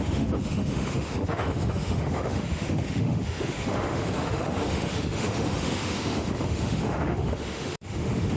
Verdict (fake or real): fake